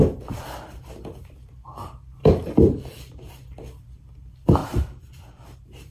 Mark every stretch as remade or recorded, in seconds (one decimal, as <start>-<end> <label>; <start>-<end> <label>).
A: 0.0-2.2 recorded; 2.2-3.3 remade; 3.3-4.6 recorded; 4.6-5.9 remade